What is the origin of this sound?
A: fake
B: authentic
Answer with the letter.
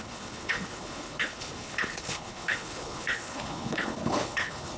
A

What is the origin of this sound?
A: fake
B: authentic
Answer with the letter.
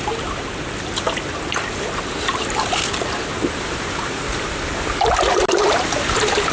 B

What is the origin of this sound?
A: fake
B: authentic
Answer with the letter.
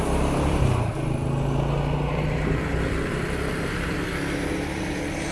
B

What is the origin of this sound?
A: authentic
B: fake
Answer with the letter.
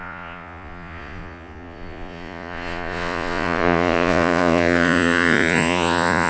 B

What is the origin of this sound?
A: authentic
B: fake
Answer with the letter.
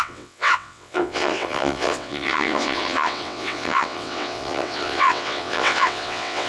B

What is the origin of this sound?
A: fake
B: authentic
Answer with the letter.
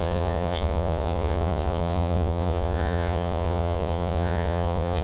A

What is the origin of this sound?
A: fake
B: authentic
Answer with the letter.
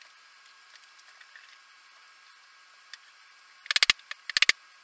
B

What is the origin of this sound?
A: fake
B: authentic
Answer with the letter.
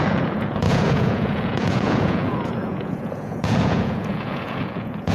A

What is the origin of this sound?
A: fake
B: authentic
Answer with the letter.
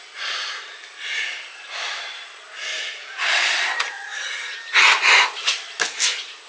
B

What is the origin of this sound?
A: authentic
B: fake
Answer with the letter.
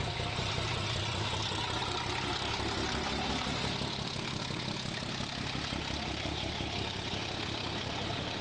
A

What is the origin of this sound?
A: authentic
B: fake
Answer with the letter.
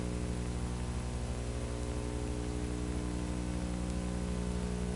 A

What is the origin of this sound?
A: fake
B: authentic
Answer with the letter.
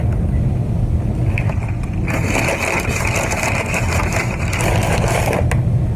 B